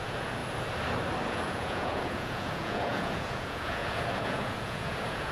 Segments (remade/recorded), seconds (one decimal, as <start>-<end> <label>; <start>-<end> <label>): 0.0-0.4 remade; 0.4-1.3 recorded; 1.3-5.3 remade